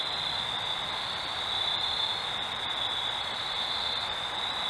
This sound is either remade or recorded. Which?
recorded